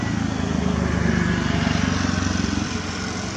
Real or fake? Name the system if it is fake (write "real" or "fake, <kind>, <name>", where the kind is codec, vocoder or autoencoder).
real